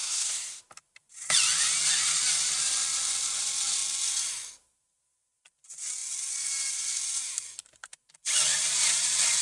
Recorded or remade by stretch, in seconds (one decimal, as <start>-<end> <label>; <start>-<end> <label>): 0.0-0.6 remade; 0.6-9.4 recorded